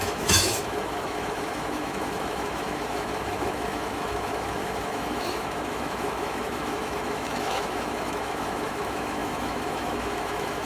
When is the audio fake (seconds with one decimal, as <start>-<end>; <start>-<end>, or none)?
0.0-10.7